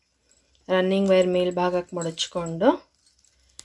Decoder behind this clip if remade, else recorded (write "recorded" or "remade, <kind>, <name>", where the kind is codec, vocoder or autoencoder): recorded